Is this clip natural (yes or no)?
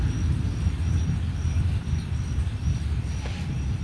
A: yes